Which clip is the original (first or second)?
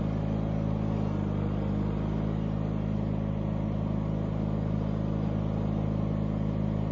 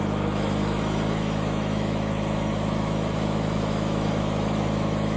first